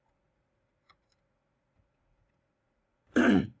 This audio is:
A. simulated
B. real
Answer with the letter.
A